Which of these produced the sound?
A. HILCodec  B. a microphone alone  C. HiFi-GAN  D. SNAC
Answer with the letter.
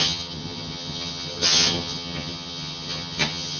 C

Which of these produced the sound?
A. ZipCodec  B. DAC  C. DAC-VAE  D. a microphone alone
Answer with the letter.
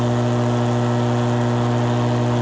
D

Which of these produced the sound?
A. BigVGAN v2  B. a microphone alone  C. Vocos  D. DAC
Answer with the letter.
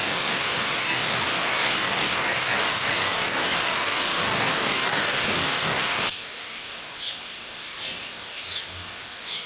D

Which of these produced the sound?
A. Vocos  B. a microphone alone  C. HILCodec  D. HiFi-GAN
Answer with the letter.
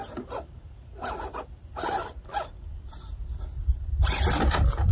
B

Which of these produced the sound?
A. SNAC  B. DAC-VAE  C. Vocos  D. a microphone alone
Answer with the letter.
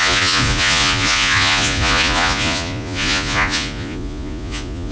C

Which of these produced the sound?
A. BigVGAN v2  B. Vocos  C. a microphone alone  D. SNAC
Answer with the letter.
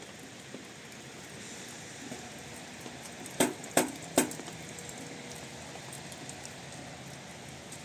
C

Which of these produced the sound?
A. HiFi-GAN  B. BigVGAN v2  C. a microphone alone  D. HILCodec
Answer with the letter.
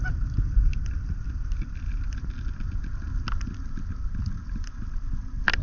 C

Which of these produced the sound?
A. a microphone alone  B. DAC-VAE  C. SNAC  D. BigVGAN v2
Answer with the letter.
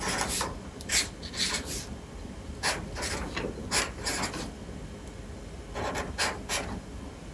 A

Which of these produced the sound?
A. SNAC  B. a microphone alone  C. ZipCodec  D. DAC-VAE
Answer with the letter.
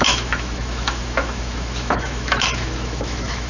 D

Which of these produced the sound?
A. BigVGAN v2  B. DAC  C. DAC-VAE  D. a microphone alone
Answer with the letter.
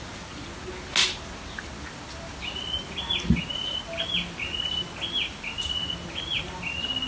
D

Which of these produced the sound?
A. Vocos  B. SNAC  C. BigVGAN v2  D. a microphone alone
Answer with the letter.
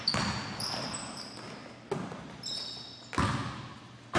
D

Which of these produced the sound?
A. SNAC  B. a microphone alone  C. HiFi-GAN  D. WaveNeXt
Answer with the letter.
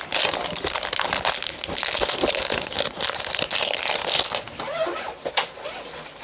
B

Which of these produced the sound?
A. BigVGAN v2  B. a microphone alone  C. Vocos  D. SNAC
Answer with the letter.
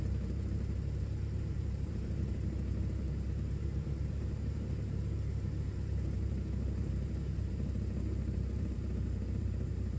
A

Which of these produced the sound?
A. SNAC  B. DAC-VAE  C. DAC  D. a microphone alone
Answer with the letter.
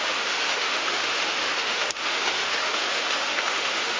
B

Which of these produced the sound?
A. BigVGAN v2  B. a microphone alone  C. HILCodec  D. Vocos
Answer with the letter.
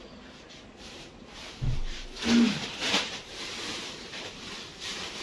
A